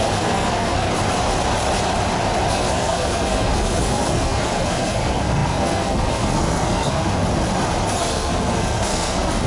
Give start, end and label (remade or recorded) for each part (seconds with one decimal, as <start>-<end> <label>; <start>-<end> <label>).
0.0-0.9 remade; 0.9-2.5 recorded; 2.5-7.2 remade; 7.2-8.0 recorded; 8.0-9.5 remade